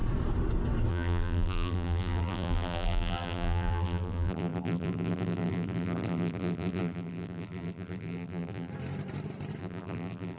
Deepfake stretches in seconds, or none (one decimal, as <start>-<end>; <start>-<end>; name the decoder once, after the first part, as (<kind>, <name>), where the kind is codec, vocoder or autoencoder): 0.9-8.7 (vocoder, BigVGAN v2); 9.6-10.4